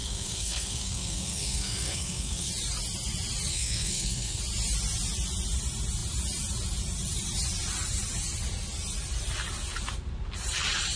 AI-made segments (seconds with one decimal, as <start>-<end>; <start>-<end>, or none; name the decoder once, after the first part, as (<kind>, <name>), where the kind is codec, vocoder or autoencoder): 0.0-2.5 (codec, SNAC); 3.5-4.4